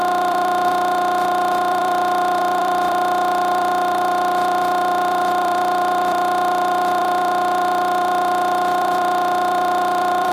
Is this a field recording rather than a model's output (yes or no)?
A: no